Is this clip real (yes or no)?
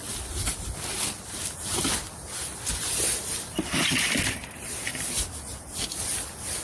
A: yes